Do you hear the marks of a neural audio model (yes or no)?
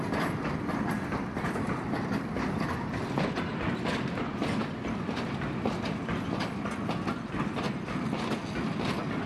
no